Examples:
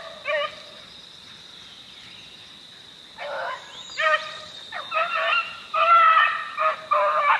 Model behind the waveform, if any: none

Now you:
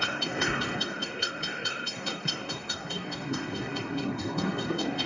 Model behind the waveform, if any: codec, SNAC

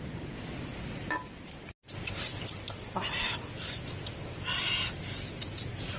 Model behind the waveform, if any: none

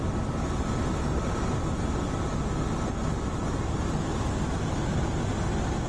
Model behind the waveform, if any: none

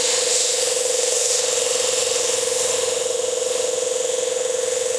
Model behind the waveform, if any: autoencoder, DAC-VAE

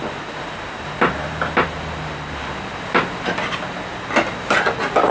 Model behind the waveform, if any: none